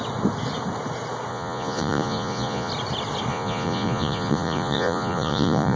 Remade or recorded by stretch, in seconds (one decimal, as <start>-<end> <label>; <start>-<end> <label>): 0.0-1.3 recorded; 1.3-2.7 remade; 2.7-3.3 recorded; 3.3-5.8 remade